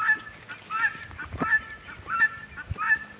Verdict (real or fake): real